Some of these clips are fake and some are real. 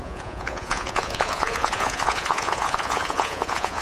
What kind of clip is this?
fake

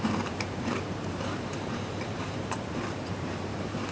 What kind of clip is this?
fake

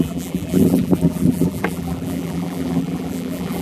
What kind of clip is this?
fake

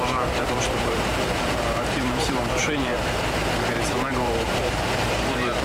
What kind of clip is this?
fake